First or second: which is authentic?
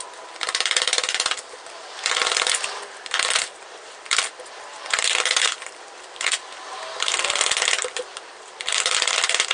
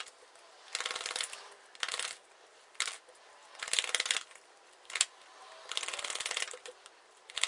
second